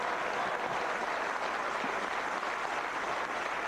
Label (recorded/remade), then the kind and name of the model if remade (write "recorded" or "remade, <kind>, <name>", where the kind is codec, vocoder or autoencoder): recorded